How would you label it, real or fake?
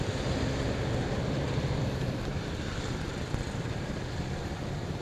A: real